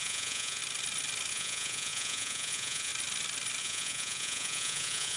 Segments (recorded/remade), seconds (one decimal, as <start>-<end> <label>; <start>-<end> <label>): 0.0-0.6 remade; 0.6-1.3 recorded; 1.3-2.9 remade; 2.9-3.6 recorded; 3.6-5.2 remade